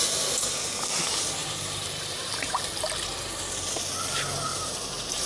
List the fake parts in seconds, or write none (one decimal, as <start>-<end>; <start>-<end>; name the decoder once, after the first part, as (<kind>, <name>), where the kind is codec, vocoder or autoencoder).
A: 1.4-2.6 (vocoder, BigVGAN v2); 4.5-5.3